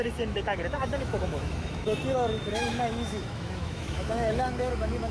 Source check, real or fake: fake